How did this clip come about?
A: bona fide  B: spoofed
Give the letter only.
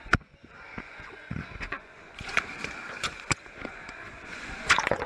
B